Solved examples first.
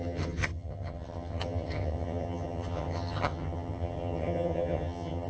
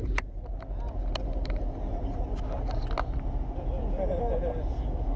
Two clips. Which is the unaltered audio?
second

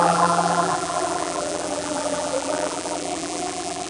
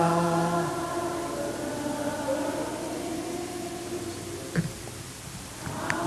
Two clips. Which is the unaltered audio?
second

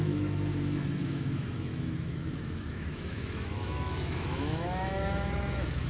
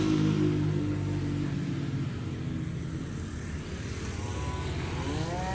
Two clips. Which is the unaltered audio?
second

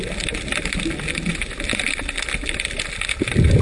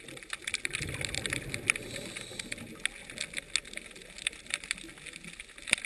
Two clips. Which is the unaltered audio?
second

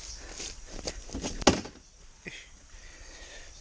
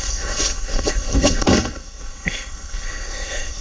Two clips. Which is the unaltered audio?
first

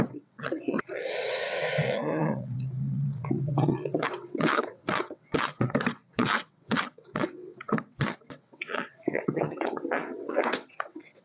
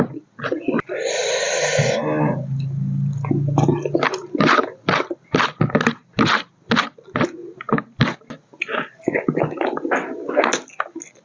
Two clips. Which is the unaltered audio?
second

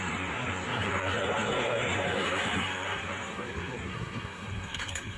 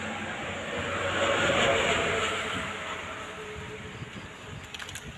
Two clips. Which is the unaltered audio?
second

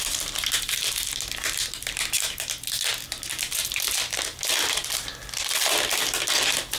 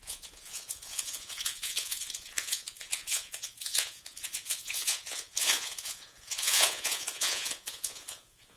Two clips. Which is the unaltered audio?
first